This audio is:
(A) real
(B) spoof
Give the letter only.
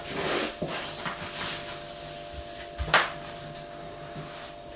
A